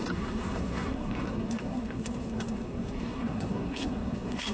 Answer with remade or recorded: remade